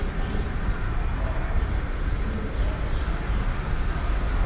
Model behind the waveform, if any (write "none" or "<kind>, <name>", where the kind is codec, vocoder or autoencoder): none